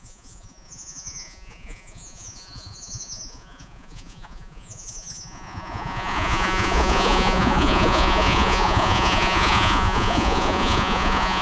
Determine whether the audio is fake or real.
fake